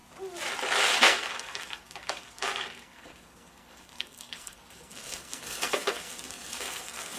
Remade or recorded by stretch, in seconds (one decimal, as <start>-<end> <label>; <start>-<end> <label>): 0.0-1.0 recorded; 1.0-7.2 remade